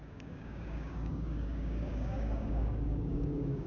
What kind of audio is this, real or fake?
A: fake